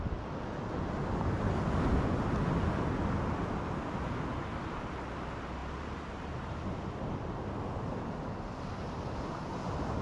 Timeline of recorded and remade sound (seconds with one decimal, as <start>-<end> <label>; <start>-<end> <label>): 0.0-10.0 recorded